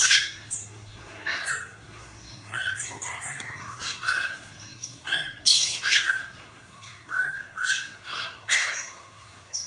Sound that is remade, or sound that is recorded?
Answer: remade